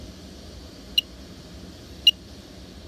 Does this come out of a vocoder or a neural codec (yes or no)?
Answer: no